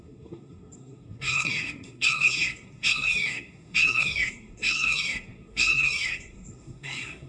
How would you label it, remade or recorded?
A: remade